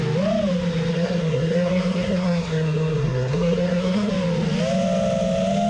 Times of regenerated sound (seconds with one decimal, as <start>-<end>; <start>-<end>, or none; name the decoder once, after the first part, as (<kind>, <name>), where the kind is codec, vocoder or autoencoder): 0.9-4.1 (codec, SNAC)